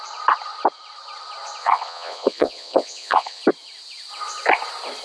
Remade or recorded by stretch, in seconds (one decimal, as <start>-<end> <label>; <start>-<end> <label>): 0.0-1.6 recorded; 1.6-3.4 remade; 3.4-5.0 recorded